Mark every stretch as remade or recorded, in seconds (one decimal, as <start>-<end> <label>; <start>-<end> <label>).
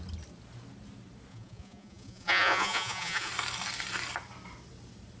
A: 0.0-1.3 recorded; 1.3-3.3 remade; 3.3-5.2 recorded